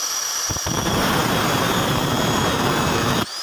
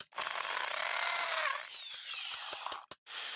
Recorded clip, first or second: second